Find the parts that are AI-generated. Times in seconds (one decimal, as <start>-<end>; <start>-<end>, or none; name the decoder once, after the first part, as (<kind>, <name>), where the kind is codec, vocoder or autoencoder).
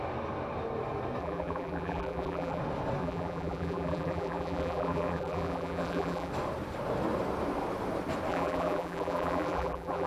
1.2-2.6 (vocoder, BigVGAN v2); 3.0-6.3; 8.3-10.1